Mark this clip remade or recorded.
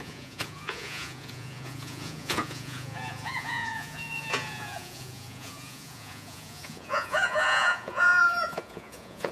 remade